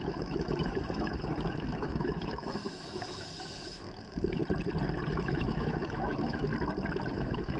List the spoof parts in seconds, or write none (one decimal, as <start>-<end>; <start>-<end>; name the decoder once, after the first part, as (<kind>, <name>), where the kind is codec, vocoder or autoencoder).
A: 0.0-4.4 (autoencoder, DAC-VAE); 5.1-6.5; 7.1-7.6